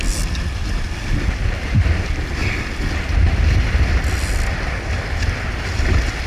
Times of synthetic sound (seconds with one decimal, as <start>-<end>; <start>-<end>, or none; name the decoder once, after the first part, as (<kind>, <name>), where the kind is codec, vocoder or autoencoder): none